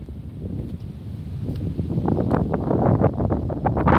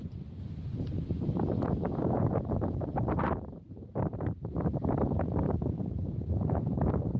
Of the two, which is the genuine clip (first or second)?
first